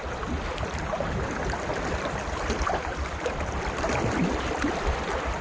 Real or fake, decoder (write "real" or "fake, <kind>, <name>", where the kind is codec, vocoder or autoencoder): fake, vocoder, BigVGAN v2